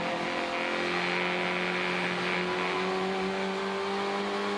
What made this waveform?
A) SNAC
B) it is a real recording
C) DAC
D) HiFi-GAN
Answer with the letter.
B